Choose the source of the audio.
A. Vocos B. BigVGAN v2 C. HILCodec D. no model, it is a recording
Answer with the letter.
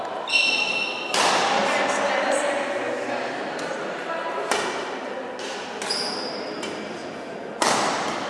D